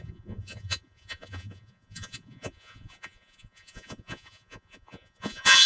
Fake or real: fake